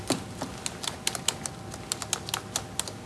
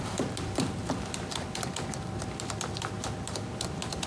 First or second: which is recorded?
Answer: first